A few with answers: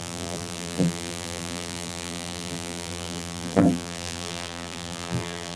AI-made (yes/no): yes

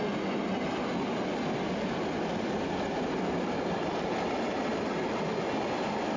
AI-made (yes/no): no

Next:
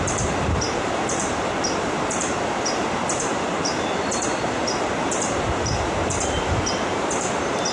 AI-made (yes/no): yes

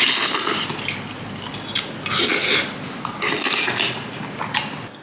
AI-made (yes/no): no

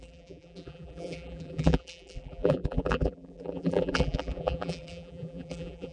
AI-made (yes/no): yes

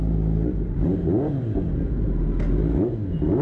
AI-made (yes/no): no